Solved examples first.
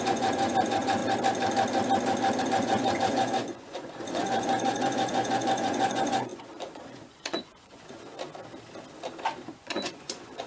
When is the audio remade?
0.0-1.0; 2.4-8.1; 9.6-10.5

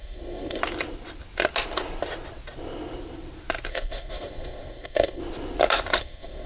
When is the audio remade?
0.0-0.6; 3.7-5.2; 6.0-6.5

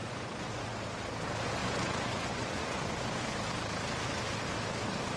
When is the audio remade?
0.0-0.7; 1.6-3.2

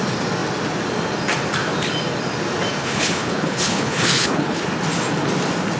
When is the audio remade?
2.8-4.7

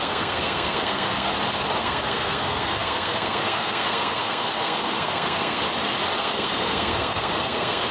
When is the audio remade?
0.0-1.3; 1.8-5.6; 6.2-7.9